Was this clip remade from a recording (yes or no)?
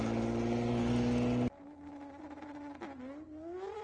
no